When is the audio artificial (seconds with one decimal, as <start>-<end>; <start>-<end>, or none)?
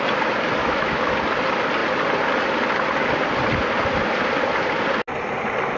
0.6-1.1